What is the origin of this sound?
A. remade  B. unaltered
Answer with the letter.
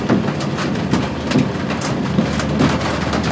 B